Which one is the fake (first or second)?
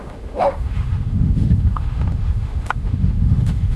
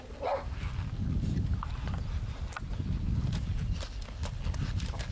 first